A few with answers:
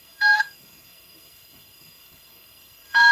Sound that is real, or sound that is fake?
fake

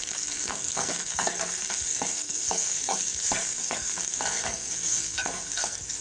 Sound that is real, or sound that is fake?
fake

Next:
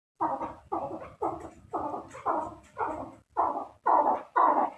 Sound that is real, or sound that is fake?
real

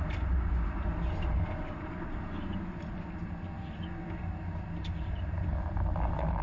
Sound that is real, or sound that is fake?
real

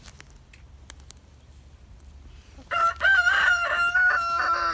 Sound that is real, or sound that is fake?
real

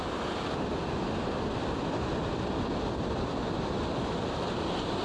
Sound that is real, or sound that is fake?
real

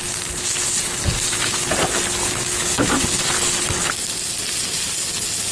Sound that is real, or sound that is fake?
real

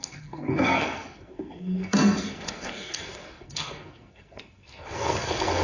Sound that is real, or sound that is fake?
fake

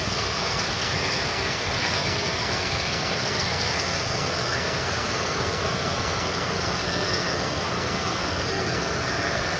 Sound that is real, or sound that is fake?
fake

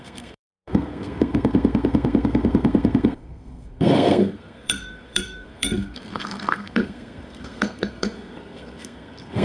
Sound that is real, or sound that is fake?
fake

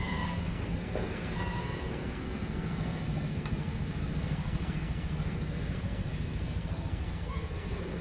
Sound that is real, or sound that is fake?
fake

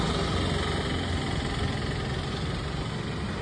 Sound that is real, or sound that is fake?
real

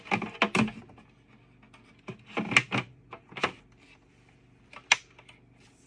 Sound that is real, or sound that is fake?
real